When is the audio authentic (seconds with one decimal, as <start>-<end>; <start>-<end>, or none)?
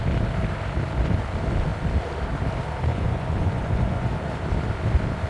0.0-2.9; 4.1-5.3